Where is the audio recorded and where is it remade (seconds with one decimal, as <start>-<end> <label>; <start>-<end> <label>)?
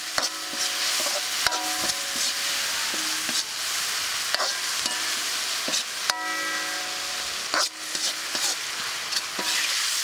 0.0-10.0 recorded